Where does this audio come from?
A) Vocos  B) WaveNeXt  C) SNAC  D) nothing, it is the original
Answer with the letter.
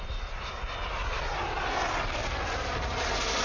D